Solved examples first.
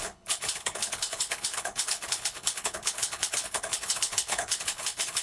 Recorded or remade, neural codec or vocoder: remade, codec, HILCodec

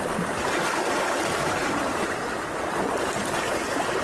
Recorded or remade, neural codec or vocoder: recorded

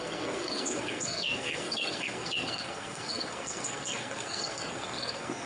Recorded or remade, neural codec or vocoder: remade, codec, SNAC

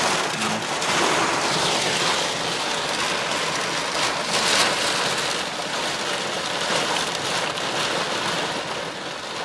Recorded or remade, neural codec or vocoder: recorded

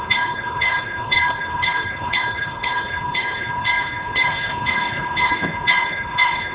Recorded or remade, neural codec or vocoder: remade, codec, HILCodec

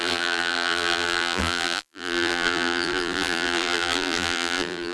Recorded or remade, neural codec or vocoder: remade, vocoder, BigVGAN v2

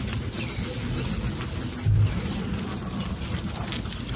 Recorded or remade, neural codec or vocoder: recorded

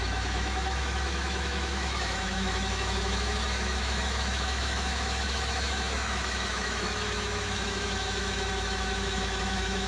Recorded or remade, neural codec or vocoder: remade, autoencoder, DAC-VAE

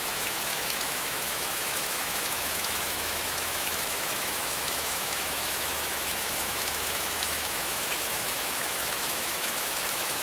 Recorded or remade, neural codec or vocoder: remade, autoencoder, DAC-VAE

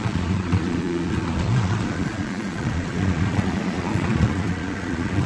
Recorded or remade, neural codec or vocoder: remade, vocoder, Vocos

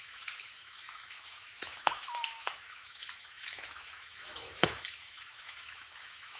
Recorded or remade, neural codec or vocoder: remade, autoencoder, DAC-VAE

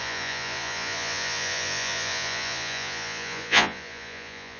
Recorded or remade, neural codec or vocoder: remade, vocoder, Vocos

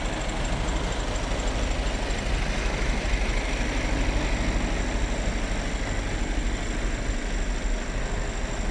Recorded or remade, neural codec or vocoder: recorded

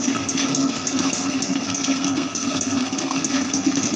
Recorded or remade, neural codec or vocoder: remade, codec, SNAC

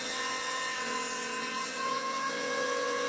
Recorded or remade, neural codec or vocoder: remade, vocoder, WaveNeXt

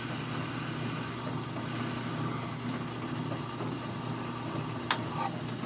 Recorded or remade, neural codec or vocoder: recorded